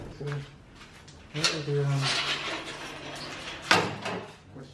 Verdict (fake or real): real